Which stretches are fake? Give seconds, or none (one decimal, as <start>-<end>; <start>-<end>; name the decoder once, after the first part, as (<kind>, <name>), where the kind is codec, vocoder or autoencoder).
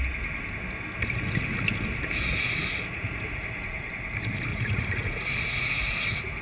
2.3-3.9 (vocoder, Vocos); 4.5-6.4